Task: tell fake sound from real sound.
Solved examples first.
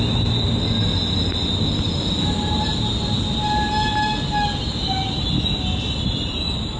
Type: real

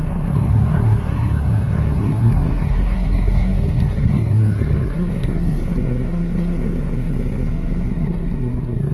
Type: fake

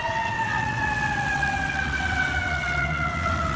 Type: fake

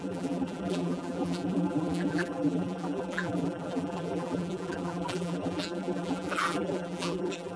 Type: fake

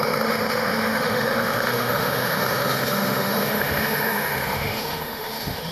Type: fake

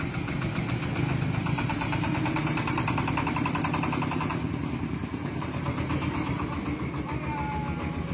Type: real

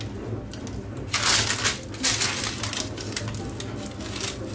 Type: real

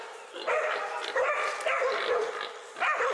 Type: real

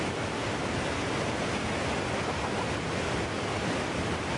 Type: real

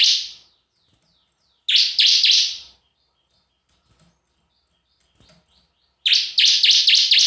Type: real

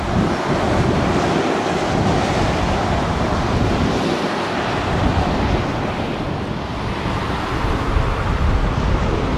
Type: real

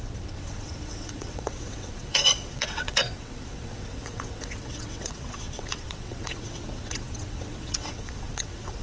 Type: fake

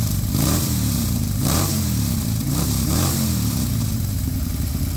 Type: fake